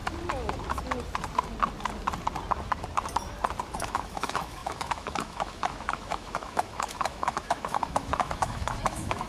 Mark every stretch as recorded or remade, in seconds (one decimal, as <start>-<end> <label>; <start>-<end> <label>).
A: 0.0-3.8 recorded; 3.8-9.3 remade